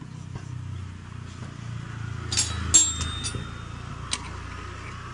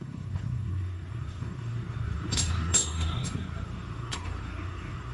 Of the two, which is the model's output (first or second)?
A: second